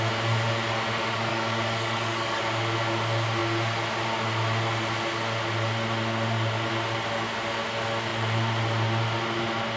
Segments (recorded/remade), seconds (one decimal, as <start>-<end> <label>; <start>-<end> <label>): 0.0-1.3 recorded; 1.3-2.4 remade; 2.4-9.8 recorded